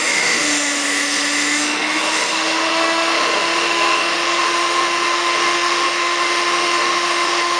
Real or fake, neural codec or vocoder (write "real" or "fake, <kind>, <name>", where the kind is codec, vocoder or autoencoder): fake, autoencoder, DAC-VAE